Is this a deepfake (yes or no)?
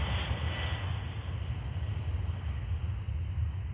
no